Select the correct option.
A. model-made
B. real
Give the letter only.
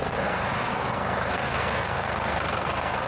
A